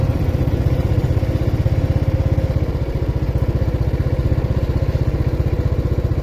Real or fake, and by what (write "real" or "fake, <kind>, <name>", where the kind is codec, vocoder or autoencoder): real